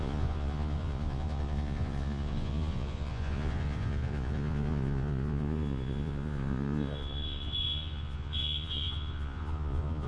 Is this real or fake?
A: fake